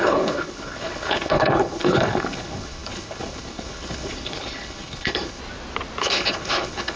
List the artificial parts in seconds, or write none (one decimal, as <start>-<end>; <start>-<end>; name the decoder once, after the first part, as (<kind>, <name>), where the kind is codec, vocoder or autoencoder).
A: 0.0-5.4 (codec, HILCodec); 6.0-7.0